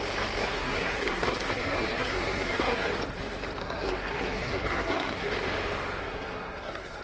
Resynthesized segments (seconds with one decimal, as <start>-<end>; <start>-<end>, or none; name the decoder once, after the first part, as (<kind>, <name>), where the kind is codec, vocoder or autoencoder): 0.4-2.9 (codec, SNAC); 3.6-5.3; 6.0-7.0